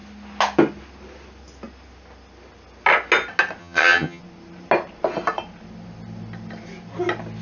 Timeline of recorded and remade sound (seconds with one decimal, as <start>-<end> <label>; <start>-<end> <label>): 0.0-3.6 recorded; 3.6-4.2 remade; 4.2-7.4 recorded

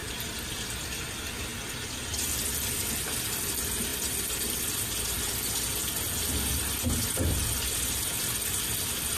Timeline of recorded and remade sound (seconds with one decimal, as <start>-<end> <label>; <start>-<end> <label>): 0.0-9.2 recorded